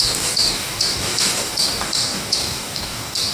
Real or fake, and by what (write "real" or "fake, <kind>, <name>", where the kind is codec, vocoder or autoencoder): fake, codec, DAC